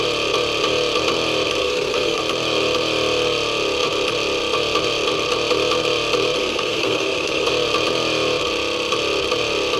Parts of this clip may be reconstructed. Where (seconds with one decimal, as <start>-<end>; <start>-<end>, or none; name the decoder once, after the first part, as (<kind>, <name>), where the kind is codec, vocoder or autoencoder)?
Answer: 1.6-2.2 (codec, SNAC); 6.4-7.5